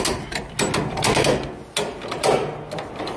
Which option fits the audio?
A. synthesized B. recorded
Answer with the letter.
B